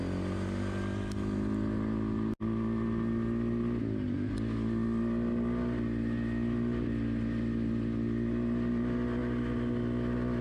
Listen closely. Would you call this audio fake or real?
real